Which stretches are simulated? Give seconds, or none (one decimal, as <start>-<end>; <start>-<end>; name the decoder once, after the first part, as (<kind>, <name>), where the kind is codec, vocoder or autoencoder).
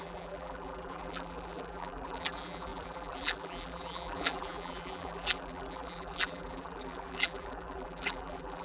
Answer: 0.0-8.6 (vocoder, BigVGAN v2)